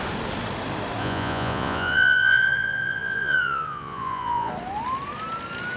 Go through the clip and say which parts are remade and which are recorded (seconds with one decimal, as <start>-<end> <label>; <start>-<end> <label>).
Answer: 0.0-1.0 recorded; 1.0-4.5 remade; 4.5-5.8 recorded